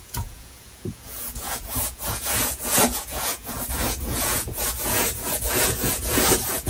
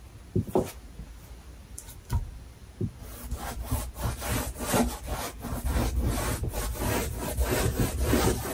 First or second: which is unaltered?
second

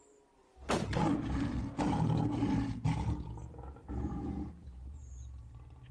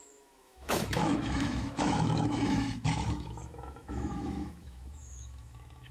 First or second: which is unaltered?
first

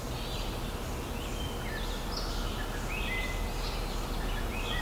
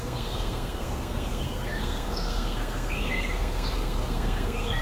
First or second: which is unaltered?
first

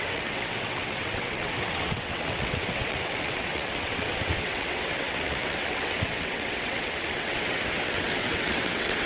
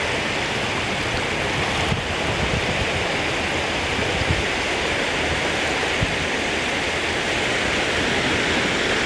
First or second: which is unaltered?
second